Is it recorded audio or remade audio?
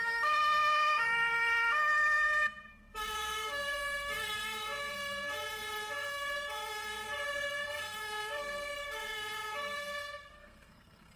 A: remade